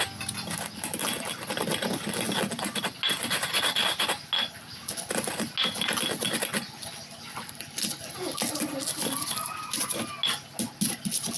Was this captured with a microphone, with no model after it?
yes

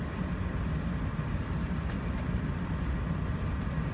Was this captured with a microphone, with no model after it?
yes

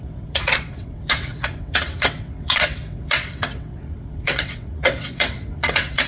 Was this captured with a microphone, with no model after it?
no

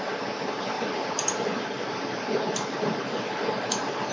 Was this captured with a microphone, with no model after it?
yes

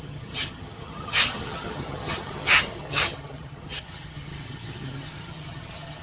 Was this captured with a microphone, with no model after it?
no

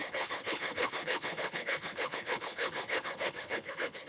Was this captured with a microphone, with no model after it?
no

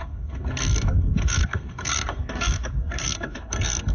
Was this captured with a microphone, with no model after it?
no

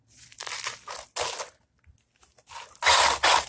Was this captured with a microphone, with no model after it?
yes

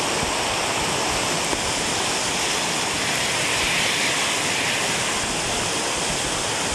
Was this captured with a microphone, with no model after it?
yes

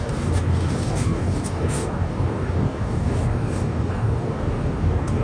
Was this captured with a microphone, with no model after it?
no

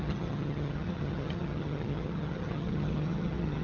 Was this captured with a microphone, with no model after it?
no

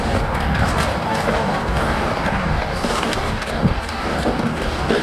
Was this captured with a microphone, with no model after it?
no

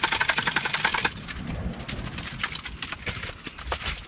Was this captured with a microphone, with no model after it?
no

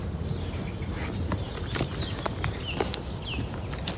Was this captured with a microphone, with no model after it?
yes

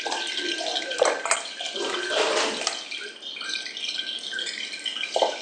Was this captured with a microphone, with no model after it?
yes